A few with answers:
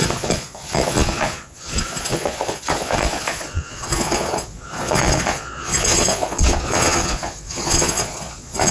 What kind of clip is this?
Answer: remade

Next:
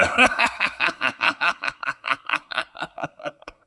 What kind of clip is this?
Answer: remade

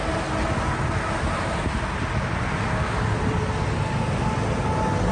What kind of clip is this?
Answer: recorded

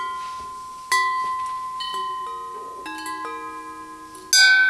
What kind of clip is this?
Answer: recorded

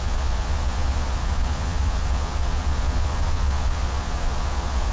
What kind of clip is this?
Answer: remade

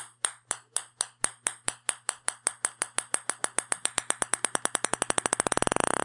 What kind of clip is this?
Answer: recorded